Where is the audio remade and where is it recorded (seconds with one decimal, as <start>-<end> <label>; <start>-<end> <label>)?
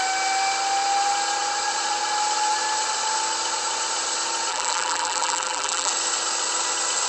0.0-4.5 recorded; 4.5-5.9 remade; 5.9-7.1 recorded